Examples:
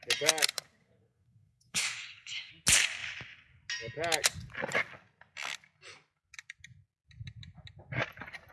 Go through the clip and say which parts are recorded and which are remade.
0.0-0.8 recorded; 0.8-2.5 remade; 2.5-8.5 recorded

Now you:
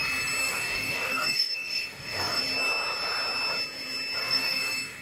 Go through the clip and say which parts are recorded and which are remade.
0.0-0.4 recorded; 0.4-2.4 remade; 2.4-4.2 recorded; 4.2-5.0 remade

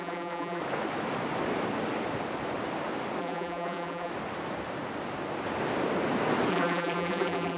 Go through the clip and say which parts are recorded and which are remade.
0.0-0.6 remade; 0.6-3.2 recorded; 3.2-4.1 remade; 4.1-6.5 recorded; 6.5-7.6 remade